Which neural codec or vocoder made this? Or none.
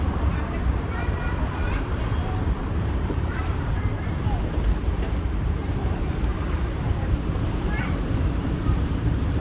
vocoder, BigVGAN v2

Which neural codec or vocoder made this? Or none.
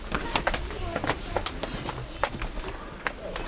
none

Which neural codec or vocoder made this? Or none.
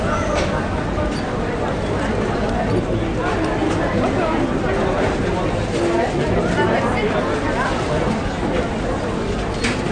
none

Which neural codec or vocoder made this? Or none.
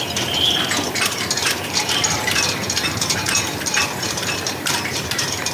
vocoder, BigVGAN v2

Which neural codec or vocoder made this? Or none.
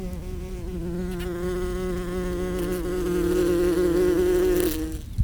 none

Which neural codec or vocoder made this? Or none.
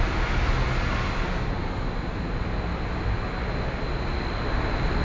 none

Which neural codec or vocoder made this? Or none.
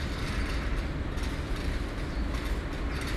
none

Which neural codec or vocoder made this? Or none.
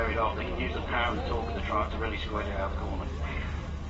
none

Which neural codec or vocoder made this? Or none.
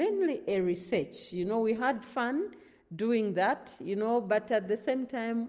none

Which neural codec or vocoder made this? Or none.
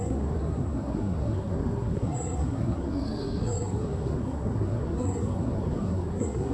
codec, SNAC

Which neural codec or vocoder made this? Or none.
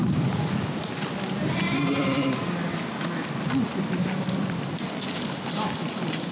none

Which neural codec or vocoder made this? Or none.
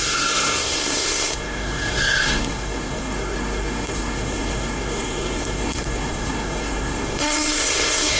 codec, SNAC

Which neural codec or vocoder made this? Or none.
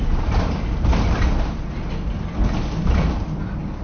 none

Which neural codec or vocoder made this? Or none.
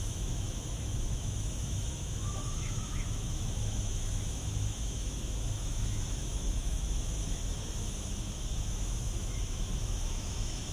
autoencoder, DAC-VAE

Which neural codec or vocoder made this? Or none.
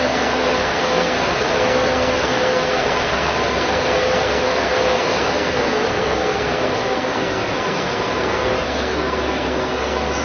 codec, SNAC